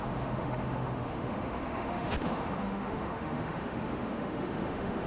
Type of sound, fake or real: fake